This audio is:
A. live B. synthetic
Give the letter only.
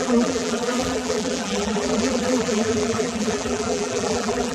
B